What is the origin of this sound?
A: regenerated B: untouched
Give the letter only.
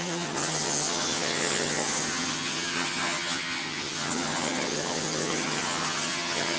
A